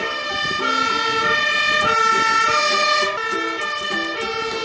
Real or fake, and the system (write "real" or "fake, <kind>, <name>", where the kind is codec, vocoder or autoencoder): real